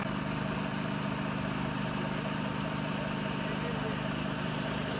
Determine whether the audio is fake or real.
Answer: real